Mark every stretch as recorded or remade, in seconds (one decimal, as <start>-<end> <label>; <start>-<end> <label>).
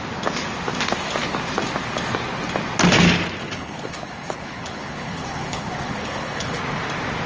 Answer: 0.0-3.4 recorded; 3.4-6.6 remade; 6.6-7.3 recorded